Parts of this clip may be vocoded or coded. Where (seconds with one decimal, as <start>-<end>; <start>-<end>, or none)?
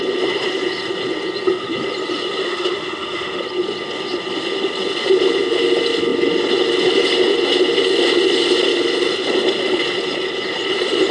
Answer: 2.4-3.4